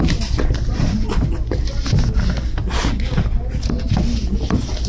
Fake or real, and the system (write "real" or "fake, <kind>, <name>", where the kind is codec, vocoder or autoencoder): real